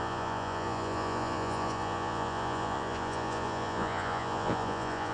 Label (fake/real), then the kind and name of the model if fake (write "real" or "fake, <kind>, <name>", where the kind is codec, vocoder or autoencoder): fake, vocoder, Vocos